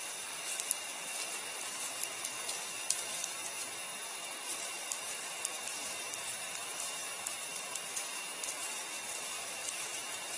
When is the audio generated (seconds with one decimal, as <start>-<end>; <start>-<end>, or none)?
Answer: 3.9-6.2; 9.6-10.4